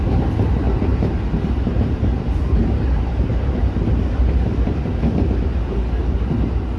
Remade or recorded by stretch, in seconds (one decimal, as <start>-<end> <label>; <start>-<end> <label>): 0.0-0.9 recorded; 0.9-4.9 remade; 4.9-6.8 recorded